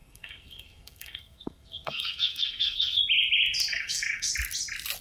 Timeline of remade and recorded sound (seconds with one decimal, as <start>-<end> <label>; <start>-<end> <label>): 0.0-3.0 remade; 3.0-3.7 recorded; 3.7-4.3 remade; 4.3-5.0 recorded